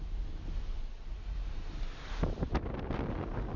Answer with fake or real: real